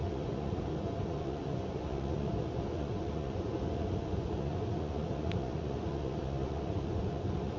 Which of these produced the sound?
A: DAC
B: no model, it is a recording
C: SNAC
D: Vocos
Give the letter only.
D